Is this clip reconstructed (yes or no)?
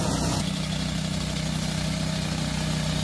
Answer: no